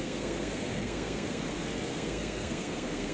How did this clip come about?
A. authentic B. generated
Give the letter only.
B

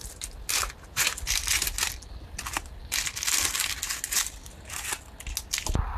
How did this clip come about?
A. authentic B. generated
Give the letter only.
A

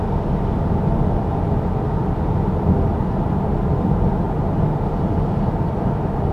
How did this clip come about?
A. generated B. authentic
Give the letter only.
B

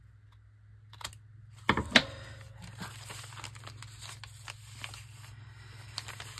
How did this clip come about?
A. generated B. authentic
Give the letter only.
B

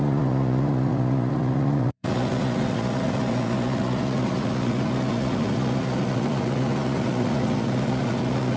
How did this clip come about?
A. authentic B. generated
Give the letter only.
B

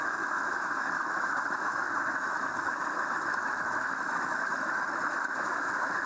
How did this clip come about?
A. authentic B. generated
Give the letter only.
B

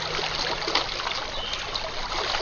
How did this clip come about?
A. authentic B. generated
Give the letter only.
A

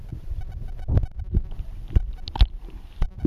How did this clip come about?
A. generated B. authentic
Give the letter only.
B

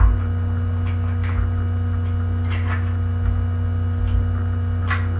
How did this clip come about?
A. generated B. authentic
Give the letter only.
B